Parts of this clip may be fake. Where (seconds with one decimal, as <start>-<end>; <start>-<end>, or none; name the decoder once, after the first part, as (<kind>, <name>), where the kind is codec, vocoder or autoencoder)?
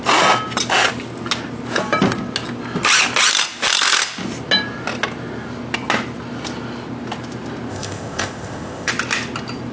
7.7-8.9 (codec, ZipCodec)